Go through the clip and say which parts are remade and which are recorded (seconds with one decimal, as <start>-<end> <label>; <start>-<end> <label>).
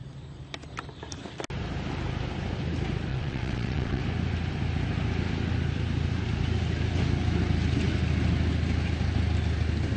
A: 0.0-3.1 recorded; 3.1-4.0 remade; 4.0-10.0 recorded